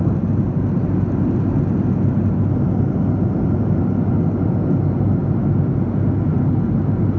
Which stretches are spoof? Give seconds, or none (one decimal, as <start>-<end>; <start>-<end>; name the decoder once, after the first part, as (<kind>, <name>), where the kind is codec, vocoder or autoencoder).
none